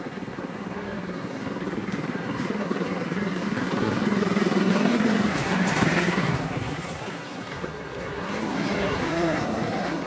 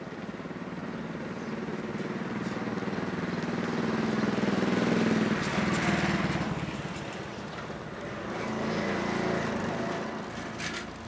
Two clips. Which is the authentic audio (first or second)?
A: second